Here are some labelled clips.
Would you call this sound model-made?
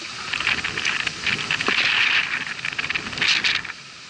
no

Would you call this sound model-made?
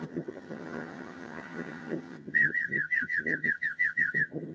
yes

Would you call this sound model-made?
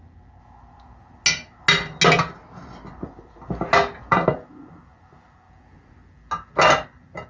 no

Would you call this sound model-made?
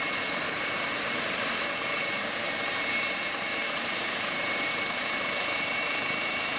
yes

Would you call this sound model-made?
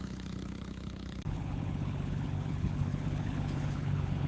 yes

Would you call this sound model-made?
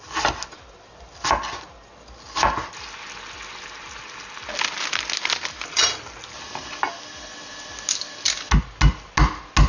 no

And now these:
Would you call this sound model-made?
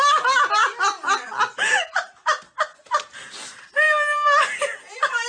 no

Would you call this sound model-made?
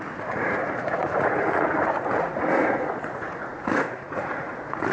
yes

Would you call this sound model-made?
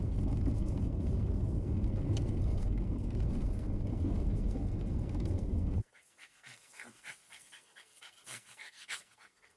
yes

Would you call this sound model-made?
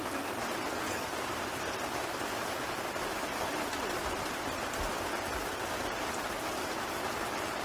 no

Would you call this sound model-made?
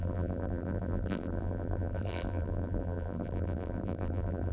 yes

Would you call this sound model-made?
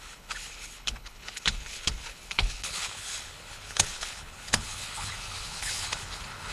yes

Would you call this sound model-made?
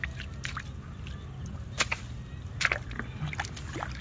no